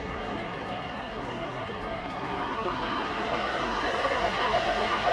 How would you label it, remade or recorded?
remade